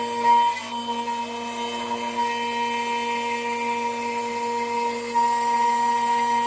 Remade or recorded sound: recorded